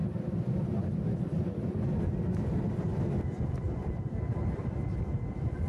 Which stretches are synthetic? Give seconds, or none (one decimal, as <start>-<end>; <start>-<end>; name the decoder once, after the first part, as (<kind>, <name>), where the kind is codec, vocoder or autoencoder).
0.0-2.5 (vocoder, BigVGAN v2)